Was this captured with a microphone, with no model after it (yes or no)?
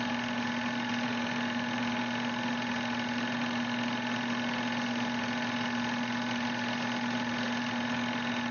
yes